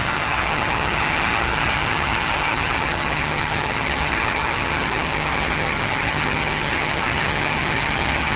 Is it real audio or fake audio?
fake